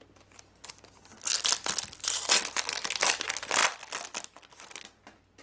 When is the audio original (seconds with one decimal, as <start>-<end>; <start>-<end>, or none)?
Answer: 0.0-1.1; 2.3-5.4